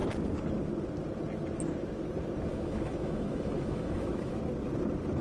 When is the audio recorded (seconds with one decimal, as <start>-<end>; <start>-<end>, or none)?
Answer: 0.0-2.5; 4.4-5.2